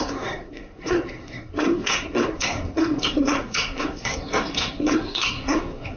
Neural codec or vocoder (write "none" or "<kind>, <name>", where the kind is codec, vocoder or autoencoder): codec, SNAC